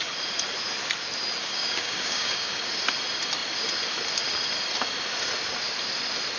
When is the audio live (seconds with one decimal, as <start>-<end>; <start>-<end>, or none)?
0.0-1.4; 2.6-6.4